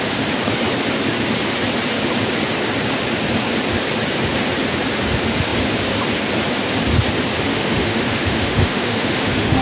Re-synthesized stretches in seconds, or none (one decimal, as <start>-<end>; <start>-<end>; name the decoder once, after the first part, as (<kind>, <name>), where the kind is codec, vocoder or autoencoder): 7.5-9.6 (autoencoder, DAC-VAE)